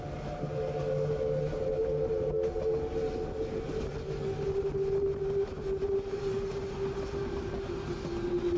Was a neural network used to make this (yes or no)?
no